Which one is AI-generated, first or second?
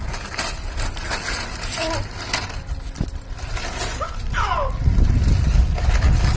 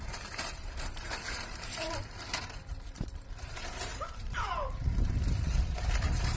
second